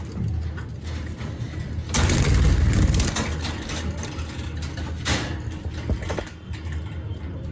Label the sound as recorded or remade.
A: recorded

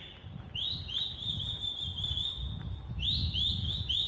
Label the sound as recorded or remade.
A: recorded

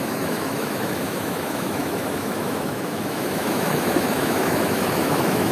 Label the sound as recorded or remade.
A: remade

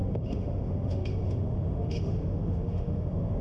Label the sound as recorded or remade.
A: remade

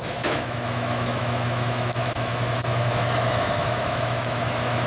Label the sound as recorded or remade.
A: remade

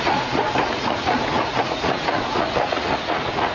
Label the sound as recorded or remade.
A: remade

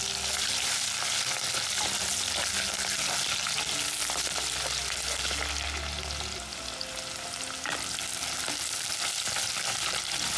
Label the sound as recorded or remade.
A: recorded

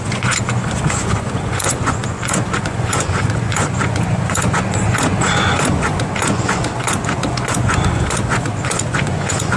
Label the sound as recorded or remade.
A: remade